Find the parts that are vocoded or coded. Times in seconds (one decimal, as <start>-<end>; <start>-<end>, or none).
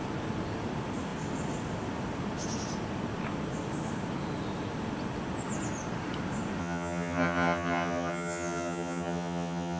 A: 6.6-9.8